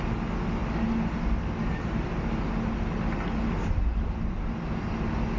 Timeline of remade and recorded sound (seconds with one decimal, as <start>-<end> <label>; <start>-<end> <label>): 0.0-5.4 recorded